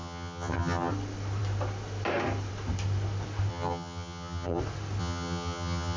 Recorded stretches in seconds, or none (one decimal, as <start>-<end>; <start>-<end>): 0.9-3.5; 4.6-5.0